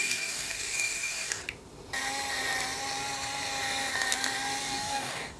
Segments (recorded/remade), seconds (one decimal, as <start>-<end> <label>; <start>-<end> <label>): 0.0-1.4 remade; 1.4-4.6 recorded; 4.6-5.4 remade